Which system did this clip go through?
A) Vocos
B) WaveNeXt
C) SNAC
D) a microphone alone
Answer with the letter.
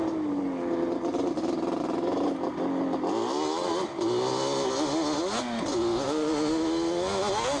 D